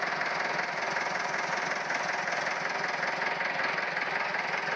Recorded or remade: recorded